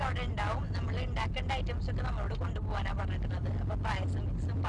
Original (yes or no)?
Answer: yes